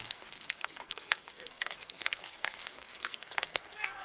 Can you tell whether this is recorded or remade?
remade